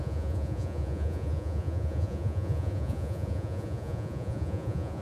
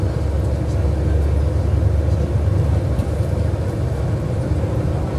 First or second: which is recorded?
second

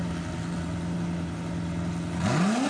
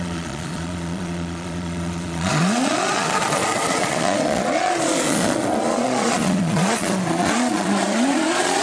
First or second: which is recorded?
first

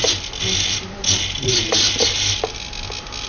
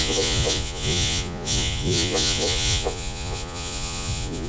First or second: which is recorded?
first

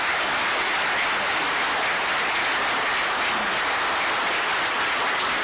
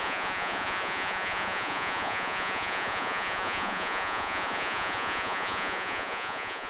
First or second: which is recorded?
first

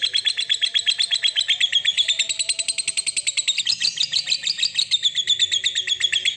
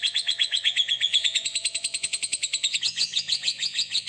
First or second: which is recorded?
first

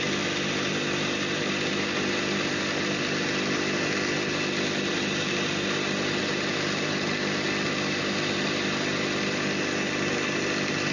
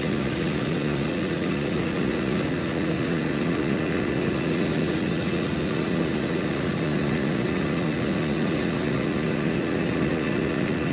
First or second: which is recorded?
first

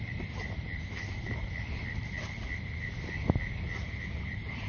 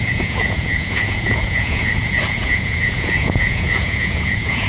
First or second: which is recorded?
first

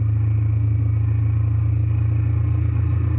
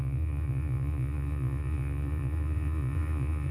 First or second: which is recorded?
first